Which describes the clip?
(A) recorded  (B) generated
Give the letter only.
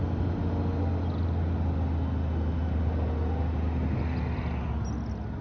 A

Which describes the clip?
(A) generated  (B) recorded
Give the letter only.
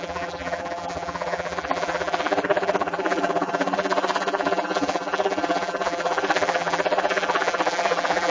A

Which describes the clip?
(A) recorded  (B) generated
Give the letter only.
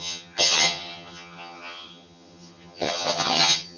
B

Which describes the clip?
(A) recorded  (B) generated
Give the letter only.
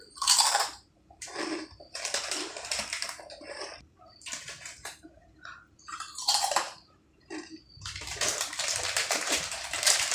B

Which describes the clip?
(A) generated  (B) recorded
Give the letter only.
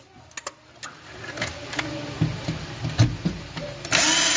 B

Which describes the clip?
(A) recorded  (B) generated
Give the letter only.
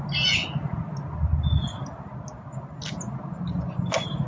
A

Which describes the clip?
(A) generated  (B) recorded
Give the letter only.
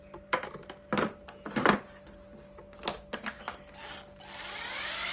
B